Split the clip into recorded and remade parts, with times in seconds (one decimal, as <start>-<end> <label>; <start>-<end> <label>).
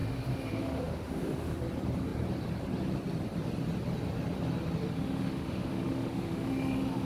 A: 0.0-1.6 remade; 1.6-4.8 recorded; 4.8-7.1 remade